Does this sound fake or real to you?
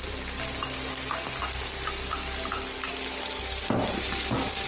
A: real